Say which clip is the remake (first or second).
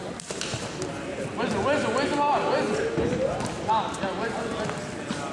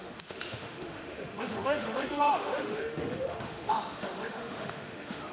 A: second